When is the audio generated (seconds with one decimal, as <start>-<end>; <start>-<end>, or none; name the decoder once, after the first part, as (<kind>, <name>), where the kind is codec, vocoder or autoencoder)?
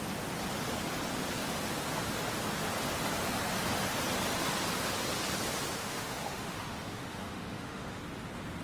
5.7-8.0 (autoencoder, DAC-VAE)